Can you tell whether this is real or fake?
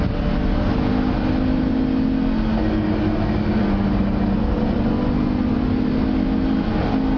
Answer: real